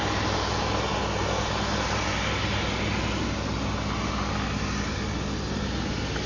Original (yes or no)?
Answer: yes